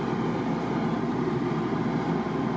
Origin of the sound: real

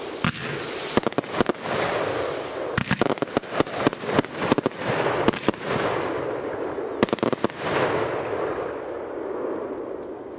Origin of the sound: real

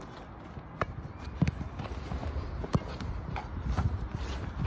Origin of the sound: real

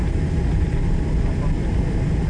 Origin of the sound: real